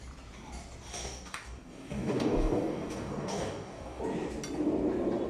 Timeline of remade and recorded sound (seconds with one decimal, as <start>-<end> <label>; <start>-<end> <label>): 0.0-0.9 recorded; 0.9-4.0 remade; 4.0-5.3 recorded